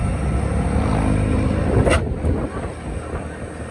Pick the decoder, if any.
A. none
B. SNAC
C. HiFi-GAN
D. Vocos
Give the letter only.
A